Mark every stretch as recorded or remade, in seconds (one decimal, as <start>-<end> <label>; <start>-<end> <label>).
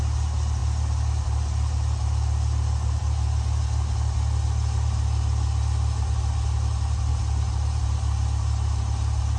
0.0-7.1 recorded; 7.1-8.7 remade; 8.7-9.4 recorded